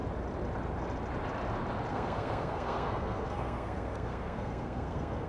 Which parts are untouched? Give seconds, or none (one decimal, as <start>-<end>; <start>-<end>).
0.0-1.9